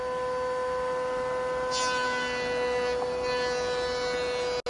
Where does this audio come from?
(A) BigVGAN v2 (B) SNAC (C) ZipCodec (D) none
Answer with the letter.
D